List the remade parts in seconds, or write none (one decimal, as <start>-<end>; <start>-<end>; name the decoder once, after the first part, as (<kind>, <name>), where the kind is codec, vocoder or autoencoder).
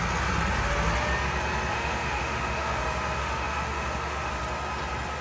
1.7-2.8 (autoencoder, DAC-VAE); 3.2-4.3